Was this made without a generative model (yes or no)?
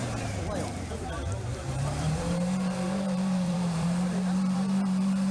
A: no